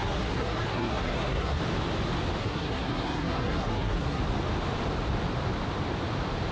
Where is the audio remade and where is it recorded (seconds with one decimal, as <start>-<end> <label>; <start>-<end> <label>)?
0.0-1.6 remade; 1.6-2.4 recorded; 2.4-4.2 remade; 4.2-6.5 recorded